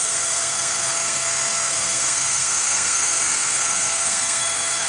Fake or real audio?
fake